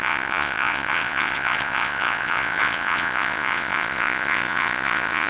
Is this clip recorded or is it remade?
remade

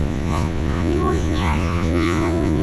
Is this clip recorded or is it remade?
remade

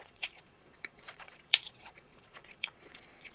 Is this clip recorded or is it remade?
remade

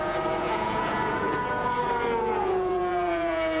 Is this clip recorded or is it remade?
remade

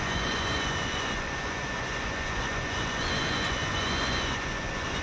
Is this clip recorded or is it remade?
remade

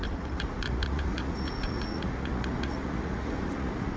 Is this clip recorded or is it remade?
remade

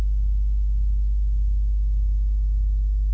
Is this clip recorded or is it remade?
recorded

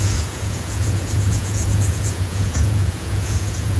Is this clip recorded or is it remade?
remade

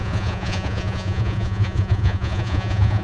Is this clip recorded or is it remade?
remade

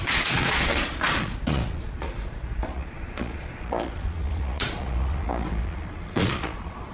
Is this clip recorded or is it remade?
remade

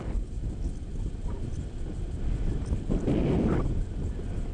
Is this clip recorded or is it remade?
recorded